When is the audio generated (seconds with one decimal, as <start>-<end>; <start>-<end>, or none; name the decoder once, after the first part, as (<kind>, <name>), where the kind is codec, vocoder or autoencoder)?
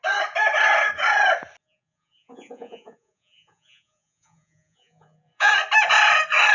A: 1.6-5.5 (vocoder, Vocos)